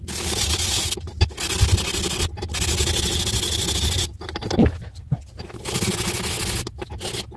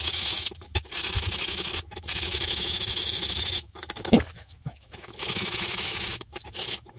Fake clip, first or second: second